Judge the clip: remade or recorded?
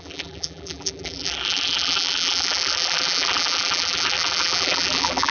remade